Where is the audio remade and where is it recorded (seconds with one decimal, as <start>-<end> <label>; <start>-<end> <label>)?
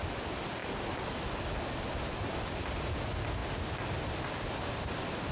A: 0.0-5.3 recorded